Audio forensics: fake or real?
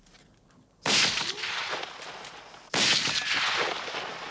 real